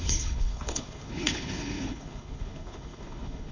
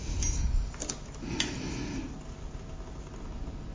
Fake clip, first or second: first